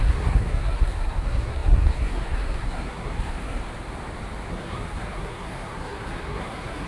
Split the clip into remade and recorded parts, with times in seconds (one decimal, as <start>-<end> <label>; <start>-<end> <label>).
0.0-3.6 remade; 3.6-4.5 recorded; 4.5-6.9 remade